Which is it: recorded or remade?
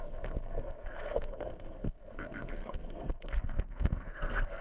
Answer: remade